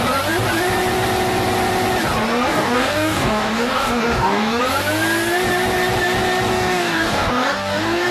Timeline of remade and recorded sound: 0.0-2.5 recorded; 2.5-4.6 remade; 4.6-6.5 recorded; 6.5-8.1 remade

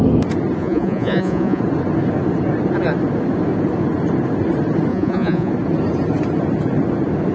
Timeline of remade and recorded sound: 0.0-0.6 recorded; 0.6-1.6 remade; 1.6-4.9 recorded; 4.9-5.5 remade; 5.5-7.3 recorded

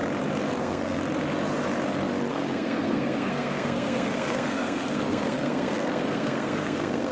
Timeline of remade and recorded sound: 0.0-0.6 recorded; 0.6-1.0 remade; 1.0-2.3 recorded; 2.3-7.1 remade